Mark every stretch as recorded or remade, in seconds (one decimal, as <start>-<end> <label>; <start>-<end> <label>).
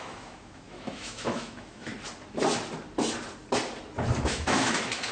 0.0-1.9 remade; 1.9-4.2 recorded; 4.2-5.1 remade